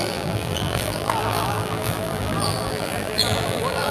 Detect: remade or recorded remade